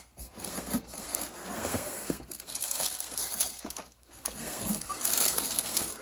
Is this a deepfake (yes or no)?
yes